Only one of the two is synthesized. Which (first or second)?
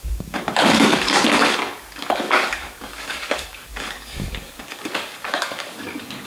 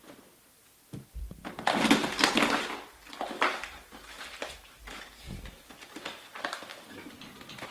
first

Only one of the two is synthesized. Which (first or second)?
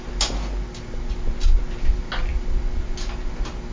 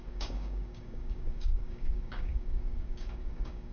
second